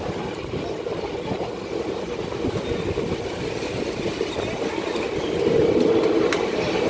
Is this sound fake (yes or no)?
no